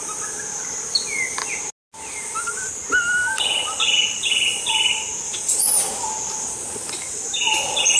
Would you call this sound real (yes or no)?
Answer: yes